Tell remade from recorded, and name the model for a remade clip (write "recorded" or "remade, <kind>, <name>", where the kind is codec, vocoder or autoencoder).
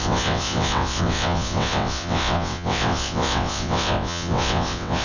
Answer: remade, vocoder, WaveNeXt